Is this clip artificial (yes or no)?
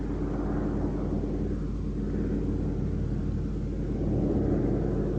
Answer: no